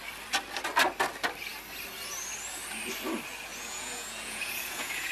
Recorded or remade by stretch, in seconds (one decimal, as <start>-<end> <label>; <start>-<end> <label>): 0.0-3.5 recorded; 3.5-5.1 remade

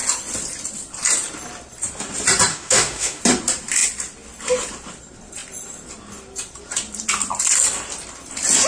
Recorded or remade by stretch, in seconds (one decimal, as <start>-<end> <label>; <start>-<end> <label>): 0.0-2.5 recorded; 2.5-3.2 remade; 3.2-8.7 recorded

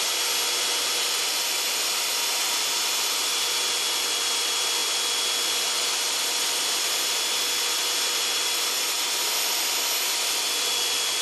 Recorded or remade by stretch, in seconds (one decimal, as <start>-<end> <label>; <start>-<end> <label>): 0.0-11.2 recorded

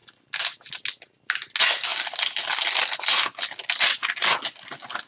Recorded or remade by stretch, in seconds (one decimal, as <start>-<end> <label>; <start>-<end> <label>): 0.0-5.1 recorded

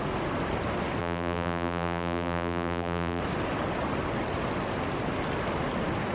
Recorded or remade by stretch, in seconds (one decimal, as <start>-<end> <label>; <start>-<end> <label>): 0.0-1.0 recorded; 1.0-3.2 remade; 3.2-6.1 recorded

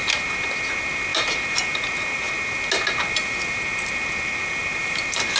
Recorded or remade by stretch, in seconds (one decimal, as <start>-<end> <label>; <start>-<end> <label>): 0.0-4.8 recorded; 4.8-5.4 remade